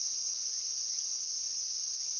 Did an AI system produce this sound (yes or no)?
no